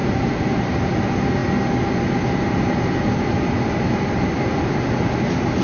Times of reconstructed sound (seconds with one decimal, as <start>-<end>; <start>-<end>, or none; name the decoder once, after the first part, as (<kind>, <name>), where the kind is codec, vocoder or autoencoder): 0.0-0.8 (vocoder, BigVGAN v2)